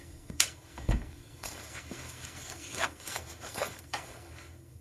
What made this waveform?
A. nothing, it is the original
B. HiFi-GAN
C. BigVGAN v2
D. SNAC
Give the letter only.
D